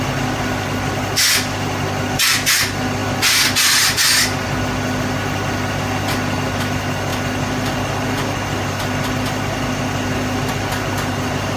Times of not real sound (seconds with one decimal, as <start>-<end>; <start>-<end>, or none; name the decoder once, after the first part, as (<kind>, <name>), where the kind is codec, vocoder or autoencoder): none